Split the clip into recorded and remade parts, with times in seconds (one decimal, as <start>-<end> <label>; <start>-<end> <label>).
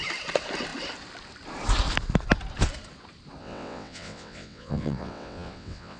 0.0-3.4 recorded; 3.4-6.0 remade